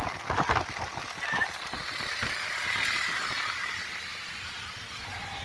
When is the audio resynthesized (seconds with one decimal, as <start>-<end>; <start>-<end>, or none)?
none